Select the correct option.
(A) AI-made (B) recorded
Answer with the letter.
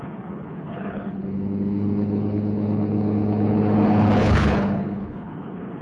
A